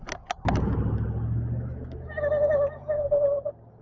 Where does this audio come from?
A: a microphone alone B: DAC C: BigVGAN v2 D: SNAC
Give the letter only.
A